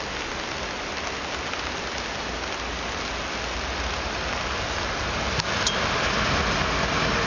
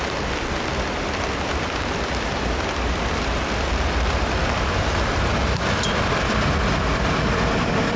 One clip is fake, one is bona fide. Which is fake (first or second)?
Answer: second